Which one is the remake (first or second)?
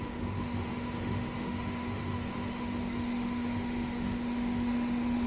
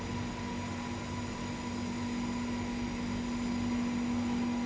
first